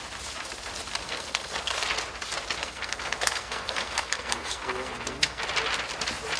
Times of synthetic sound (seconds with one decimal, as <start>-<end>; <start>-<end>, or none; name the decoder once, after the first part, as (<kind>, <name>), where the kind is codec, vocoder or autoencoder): 1.0-1.7 (codec, SNAC); 2.6-5.4